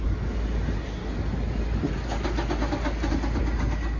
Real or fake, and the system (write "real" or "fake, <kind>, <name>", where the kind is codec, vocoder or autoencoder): real